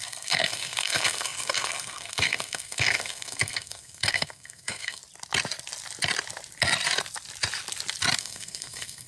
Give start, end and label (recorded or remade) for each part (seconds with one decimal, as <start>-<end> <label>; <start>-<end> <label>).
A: 0.0-5.0 remade; 5.0-8.2 recorded; 8.2-9.1 remade